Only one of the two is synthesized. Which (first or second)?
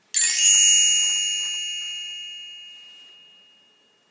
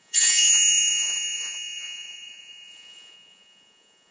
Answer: second